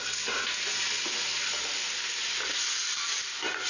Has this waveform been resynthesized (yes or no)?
no